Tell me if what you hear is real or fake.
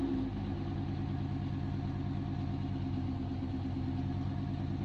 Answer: real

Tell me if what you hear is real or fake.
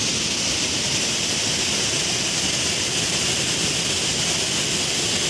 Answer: real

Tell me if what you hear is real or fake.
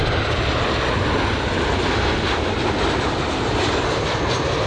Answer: real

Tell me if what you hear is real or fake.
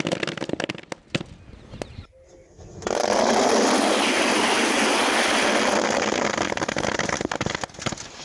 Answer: real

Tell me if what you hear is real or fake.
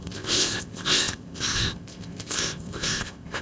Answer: fake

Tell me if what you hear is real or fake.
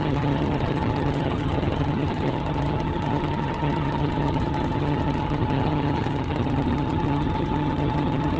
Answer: fake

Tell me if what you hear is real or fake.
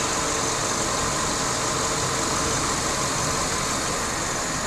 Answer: real